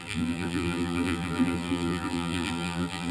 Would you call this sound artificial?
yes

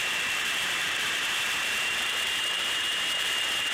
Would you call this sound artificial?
yes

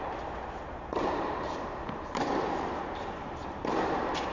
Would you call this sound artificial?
yes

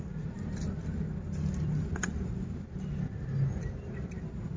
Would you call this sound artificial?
yes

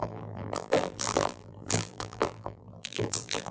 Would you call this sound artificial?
yes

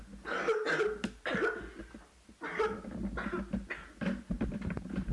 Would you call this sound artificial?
no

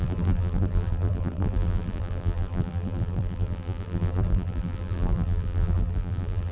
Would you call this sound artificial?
yes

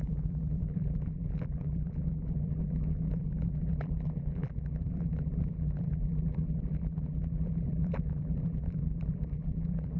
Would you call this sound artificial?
yes